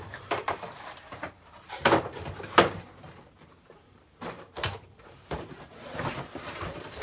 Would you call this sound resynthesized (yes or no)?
yes